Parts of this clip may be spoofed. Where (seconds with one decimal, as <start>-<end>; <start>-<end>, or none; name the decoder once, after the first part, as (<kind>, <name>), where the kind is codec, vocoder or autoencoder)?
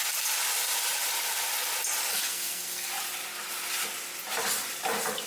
2.1-2.9 (codec, SNAC)